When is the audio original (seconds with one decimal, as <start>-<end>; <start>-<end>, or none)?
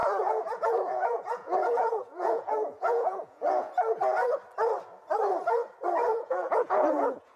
3.7-6.1